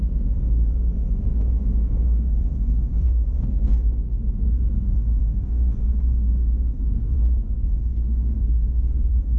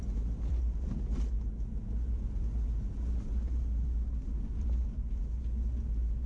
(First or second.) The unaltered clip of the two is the second